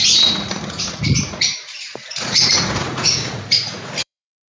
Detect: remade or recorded remade